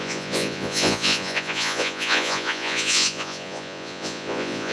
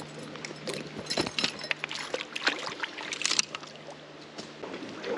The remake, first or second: first